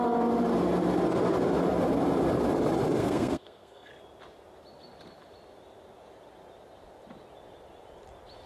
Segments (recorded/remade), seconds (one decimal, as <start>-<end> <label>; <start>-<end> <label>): 0.0-3.0 recorded; 3.0-3.9 remade; 3.9-8.5 recorded